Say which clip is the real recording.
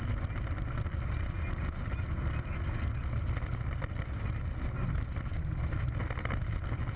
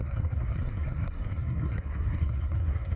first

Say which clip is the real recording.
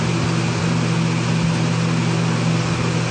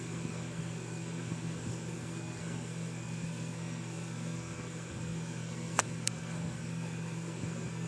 first